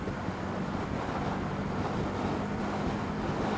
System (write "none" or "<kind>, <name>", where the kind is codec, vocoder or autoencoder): none